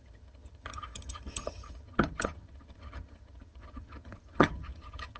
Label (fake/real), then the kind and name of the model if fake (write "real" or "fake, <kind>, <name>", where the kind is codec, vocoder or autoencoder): fake, vocoder, HiFi-GAN